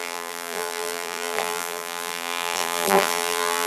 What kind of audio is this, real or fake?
fake